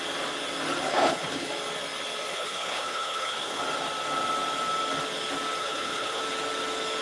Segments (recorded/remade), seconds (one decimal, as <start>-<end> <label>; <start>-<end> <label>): 0.0-0.9 recorded; 0.9-1.5 remade; 1.5-2.3 recorded; 2.3-3.6 remade; 3.6-5.6 recorded; 5.6-6.2 remade; 6.2-7.0 recorded